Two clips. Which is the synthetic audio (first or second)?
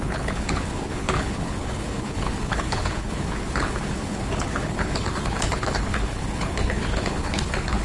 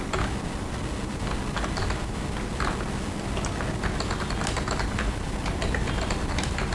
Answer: first